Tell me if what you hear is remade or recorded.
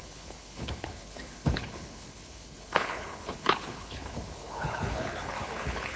remade